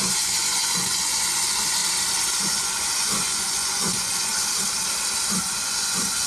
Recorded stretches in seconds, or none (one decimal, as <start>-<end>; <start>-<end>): 1.8-2.4; 4.3-5.4